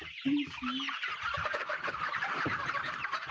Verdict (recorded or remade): recorded